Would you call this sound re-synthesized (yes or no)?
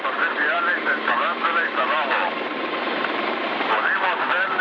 yes